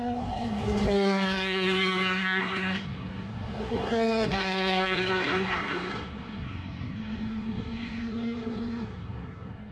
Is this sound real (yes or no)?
no